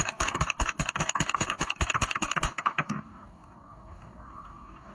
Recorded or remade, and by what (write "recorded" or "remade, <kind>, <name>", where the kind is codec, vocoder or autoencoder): remade, codec, DAC